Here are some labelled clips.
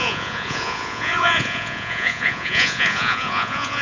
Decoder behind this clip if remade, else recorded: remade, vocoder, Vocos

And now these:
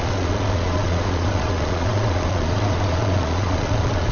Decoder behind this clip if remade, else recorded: remade, vocoder, Vocos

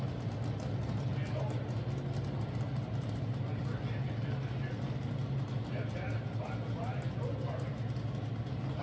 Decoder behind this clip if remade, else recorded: recorded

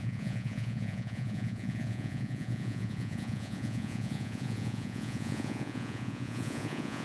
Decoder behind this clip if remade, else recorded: remade, vocoder, Vocos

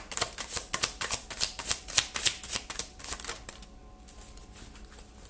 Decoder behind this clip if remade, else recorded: recorded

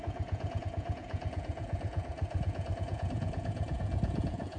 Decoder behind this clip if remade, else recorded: remade, vocoder, Vocos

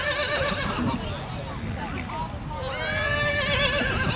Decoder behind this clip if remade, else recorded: recorded